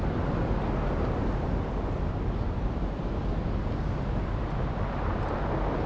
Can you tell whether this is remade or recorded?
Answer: recorded